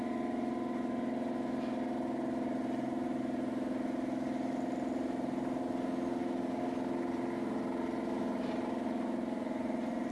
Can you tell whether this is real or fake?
real